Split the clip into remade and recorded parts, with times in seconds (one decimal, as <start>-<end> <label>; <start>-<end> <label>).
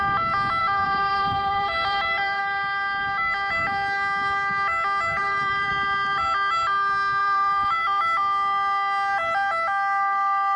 0.0-0.6 recorded; 0.6-2.4 remade; 2.4-5.2 recorded; 5.2-5.7 remade; 5.7-7.2 recorded; 7.2-8.0 remade; 8.0-10.6 recorded